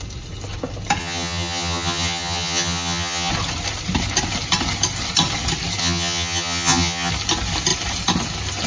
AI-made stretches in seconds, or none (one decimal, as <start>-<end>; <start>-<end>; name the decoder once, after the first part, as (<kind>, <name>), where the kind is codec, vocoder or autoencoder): 1.0-3.3 (vocoder, HiFi-GAN); 5.8-7.1